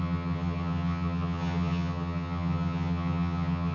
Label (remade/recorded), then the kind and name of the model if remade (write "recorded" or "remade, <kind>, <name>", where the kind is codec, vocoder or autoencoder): remade, vocoder, HiFi-GAN